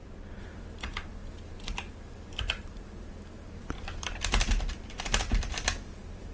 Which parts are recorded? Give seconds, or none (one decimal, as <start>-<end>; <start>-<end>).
none